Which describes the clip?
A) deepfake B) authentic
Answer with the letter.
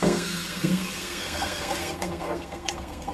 A